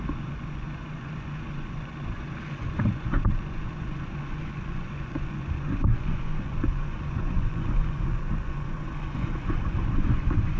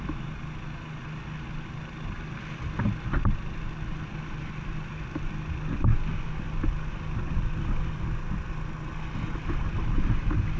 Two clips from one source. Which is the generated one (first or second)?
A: first